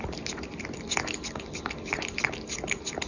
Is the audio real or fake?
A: real